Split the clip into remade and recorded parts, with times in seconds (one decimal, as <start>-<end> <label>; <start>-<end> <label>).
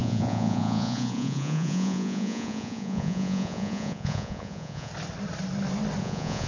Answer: 0.0-4.9 remade; 4.9-6.0 recorded; 6.0-6.5 remade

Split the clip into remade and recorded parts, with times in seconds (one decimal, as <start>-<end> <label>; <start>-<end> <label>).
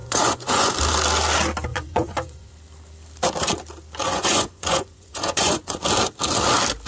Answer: 0.0-0.7 remade; 0.7-1.7 recorded; 1.7-2.5 remade; 2.5-4.0 recorded; 4.0-5.8 remade; 5.8-6.9 recorded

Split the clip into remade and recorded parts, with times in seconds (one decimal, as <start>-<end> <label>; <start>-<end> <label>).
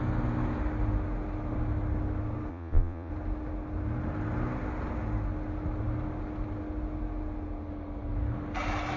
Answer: 0.0-2.5 recorded; 2.5-3.1 remade; 3.1-9.0 recorded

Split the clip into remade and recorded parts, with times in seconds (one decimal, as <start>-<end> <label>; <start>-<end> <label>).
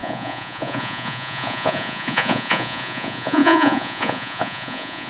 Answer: 0.0-5.1 remade